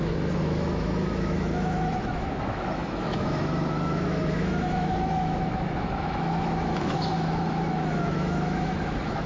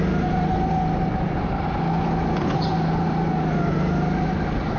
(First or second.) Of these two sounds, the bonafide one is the second